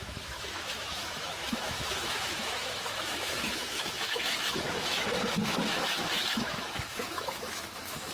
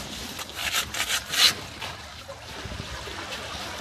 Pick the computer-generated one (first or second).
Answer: first